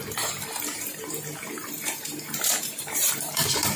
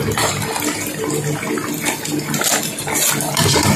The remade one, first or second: first